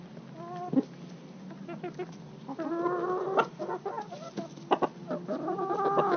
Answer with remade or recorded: recorded